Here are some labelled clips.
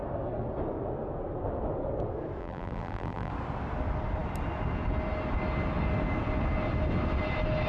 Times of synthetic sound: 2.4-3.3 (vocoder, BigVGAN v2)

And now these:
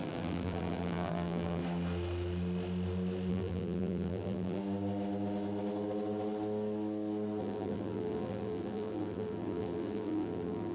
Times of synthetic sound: 0.0-1.6 (vocoder, BigVGAN v2); 3.3-4.6; 7.4-10.7

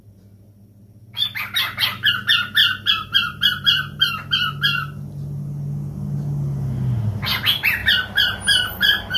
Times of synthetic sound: 2.6-4.1 (vocoder, BigVGAN v2); 7.8-9.2

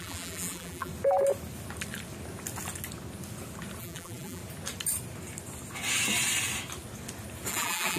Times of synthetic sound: 0.0-0.9 (vocoder, BigVGAN v2); 3.8-4.4; 7.5-8.0

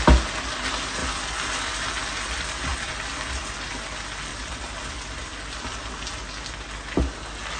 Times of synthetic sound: 1.0-1.9 (vocoder, BigVGAN v2); 2.7-3.4; 4.3-5.9